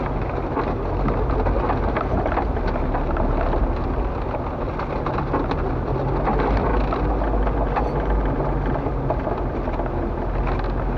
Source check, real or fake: real